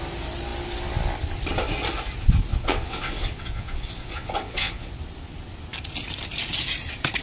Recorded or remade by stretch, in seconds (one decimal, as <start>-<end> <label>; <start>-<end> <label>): 0.0-2.5 recorded; 2.5-5.0 remade; 5.0-7.2 recorded